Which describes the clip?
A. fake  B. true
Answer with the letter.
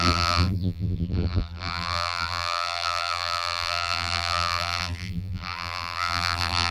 A